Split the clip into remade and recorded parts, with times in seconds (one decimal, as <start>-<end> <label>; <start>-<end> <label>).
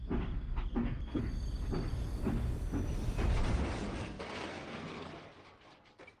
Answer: 0.0-0.7 recorded; 0.7-1.2 remade; 1.2-4.0 recorded; 4.0-5.1 remade; 5.1-6.2 recorded